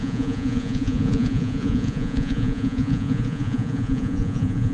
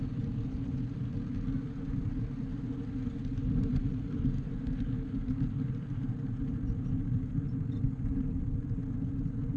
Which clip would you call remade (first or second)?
first